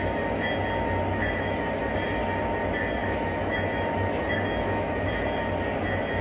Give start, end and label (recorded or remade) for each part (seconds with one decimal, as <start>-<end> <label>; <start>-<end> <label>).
0.0-1.1 recorded; 1.1-1.8 remade; 1.8-3.0 recorded; 3.0-5.1 remade; 5.1-6.2 recorded